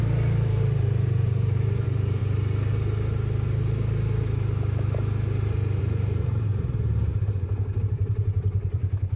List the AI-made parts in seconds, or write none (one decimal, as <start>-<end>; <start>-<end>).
0.0-2.2; 5.8-7.1; 7.8-9.2